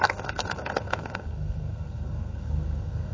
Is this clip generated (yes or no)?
yes